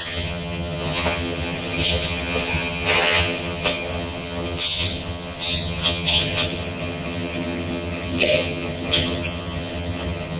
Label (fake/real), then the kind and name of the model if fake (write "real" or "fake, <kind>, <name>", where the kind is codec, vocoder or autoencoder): fake, vocoder, HiFi-GAN